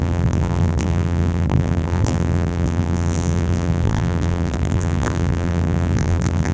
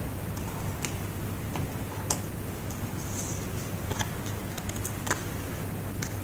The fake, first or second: first